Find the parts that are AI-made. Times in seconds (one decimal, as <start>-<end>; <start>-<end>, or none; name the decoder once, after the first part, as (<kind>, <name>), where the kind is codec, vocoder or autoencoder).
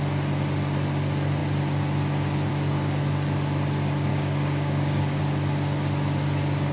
4.1-5.2 (codec, DAC)